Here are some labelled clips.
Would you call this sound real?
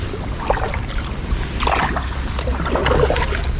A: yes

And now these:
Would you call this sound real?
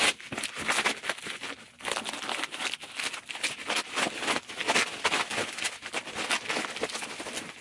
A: yes